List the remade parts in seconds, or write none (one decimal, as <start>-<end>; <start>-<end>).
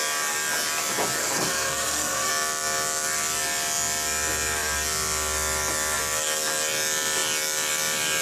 1.2-2.3